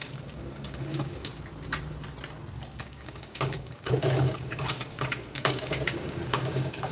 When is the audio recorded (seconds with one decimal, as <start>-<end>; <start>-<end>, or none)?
1.3-2.8